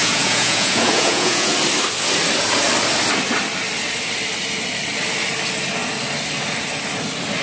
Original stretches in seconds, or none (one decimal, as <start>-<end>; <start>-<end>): 1.5-7.4